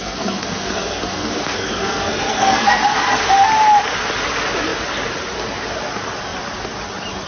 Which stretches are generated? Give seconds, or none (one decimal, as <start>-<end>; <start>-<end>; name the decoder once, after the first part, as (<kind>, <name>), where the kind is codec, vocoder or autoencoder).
0.0-3.0 (codec, SNAC)